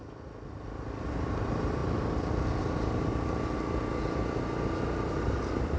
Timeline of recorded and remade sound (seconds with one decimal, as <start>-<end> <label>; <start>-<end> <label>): 0.0-5.8 recorded